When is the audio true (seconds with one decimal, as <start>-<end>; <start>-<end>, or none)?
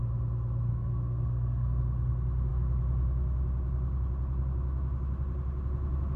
0.0-0.7; 1.8-6.2